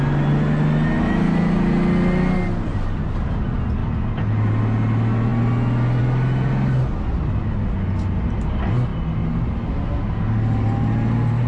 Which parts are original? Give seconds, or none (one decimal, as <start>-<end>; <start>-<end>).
0.0-11.5